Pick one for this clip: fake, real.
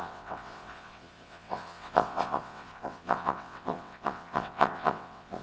fake